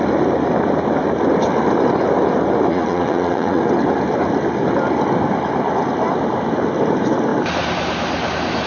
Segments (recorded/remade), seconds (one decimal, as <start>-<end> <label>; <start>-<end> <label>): 0.0-2.7 recorded; 2.7-3.6 remade; 3.6-8.7 recorded